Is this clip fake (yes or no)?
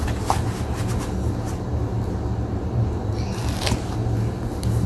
no